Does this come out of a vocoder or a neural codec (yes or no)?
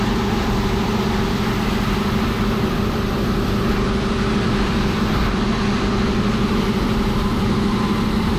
yes